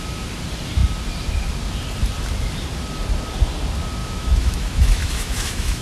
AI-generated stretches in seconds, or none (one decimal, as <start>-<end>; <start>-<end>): 4.0-5.8